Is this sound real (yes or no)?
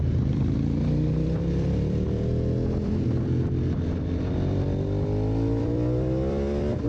no